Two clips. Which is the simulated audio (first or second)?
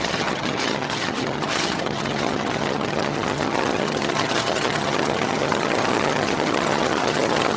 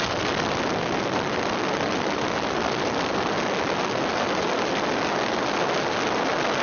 first